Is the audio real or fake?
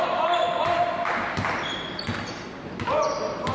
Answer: fake